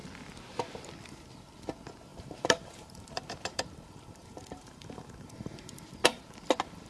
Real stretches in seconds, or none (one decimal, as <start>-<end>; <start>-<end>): 0.0-2.1; 6.2-6.9